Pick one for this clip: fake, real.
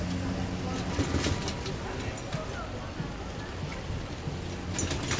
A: real